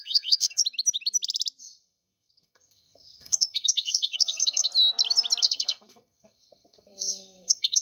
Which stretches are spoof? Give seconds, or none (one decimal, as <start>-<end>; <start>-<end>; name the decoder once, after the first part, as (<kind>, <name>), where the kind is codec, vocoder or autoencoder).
0.0-0.6 (codec, SNAC); 1.6-4.7; 5.4-7.8